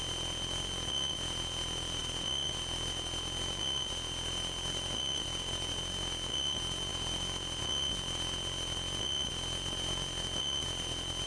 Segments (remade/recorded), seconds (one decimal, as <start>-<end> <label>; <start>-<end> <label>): 0.0-11.3 recorded